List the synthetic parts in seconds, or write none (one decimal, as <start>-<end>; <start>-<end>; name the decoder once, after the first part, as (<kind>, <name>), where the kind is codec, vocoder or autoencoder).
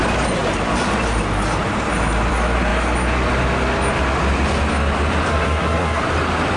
5.3-6.0 (codec, SNAC)